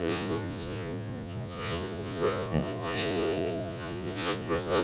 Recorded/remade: remade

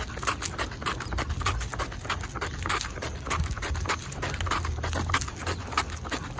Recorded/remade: recorded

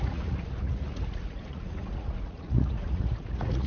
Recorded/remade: remade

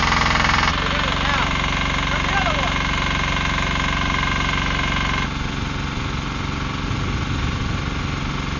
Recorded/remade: recorded